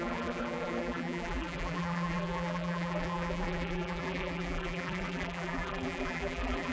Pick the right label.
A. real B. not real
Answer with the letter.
B